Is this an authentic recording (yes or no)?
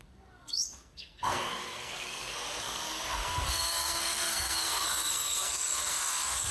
no